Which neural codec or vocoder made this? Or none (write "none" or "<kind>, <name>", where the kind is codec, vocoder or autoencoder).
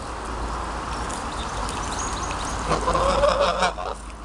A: none